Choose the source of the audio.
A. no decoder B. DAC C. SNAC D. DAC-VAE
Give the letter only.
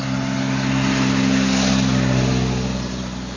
A